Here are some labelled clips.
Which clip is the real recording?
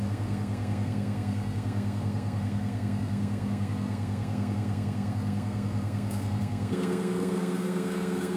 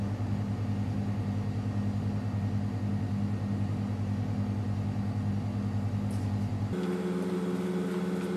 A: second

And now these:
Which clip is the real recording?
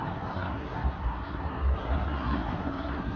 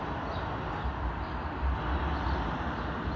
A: second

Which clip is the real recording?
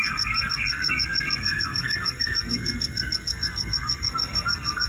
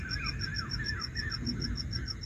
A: second